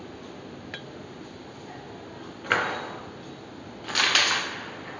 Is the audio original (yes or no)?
yes